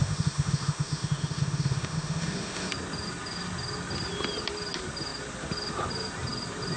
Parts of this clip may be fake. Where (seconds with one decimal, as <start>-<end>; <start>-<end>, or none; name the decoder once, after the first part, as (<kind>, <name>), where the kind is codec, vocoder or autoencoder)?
0.0-2.7 (autoencoder, DAC-VAE)